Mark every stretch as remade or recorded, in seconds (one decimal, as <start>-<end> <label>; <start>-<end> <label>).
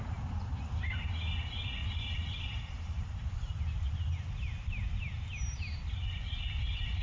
0.0-7.0 recorded